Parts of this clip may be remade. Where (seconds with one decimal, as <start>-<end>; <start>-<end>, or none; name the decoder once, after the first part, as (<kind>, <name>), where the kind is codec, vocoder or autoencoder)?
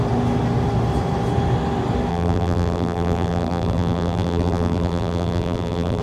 2.1-6.0 (vocoder, BigVGAN v2)